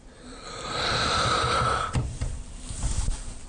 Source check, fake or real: fake